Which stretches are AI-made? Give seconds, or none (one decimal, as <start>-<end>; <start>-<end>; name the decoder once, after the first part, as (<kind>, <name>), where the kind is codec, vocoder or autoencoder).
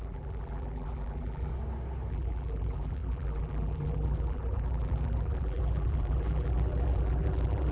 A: 0.0-1.5 (vocoder, BigVGAN v2); 2.1-7.7